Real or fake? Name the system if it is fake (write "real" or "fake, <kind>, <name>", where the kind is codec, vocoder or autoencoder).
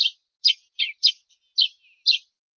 real